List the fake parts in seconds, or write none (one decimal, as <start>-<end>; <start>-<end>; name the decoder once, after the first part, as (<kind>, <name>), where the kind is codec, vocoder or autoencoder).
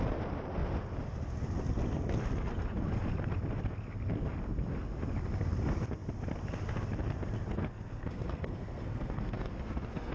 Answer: 7.6-10.1 (codec, SNAC)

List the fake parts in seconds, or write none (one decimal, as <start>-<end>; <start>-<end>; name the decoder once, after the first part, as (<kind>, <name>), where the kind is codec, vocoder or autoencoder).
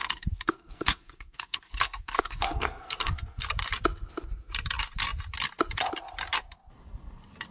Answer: 0.0-3.4 (codec, SNAC)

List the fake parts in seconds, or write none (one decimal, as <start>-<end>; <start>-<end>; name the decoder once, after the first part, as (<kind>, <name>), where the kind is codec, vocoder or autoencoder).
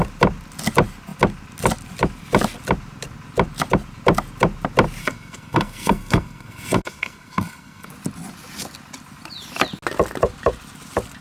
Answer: 5.0-7.9 (codec, SNAC)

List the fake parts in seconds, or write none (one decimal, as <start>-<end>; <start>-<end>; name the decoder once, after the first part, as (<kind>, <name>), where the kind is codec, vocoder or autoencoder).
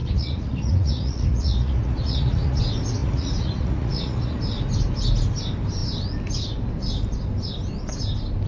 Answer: 0.0-2.6 (vocoder, Vocos); 3.0-4.4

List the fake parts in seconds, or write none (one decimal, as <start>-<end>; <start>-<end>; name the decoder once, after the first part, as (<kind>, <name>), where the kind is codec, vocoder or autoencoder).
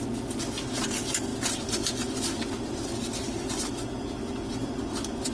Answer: none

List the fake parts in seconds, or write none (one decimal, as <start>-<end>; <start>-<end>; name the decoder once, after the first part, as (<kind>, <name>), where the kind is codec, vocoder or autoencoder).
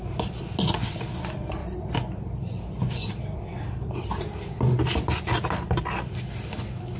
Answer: 1.6-5.8 (vocoder, BigVGAN v2)